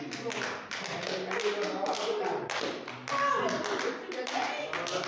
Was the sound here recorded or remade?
recorded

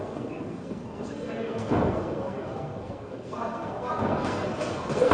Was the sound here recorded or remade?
remade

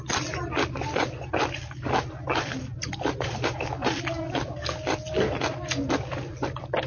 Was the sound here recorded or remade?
recorded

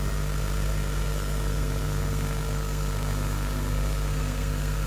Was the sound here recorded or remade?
remade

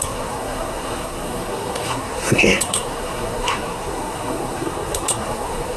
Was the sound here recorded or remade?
remade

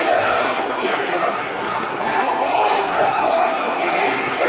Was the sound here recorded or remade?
remade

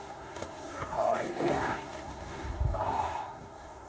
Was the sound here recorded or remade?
remade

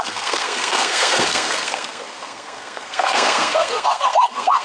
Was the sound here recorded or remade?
remade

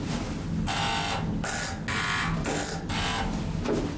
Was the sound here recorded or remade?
recorded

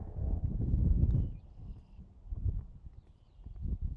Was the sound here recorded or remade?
recorded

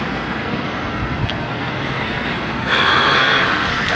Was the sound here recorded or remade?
remade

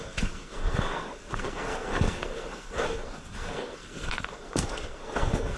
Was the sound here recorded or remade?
remade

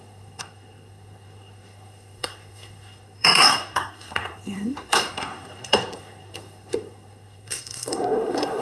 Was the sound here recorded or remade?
remade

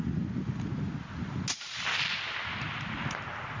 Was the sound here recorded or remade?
recorded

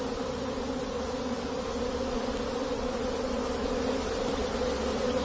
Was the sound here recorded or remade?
recorded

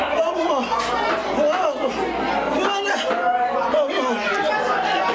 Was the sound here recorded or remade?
recorded